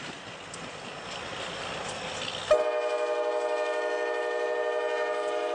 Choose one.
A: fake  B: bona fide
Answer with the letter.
B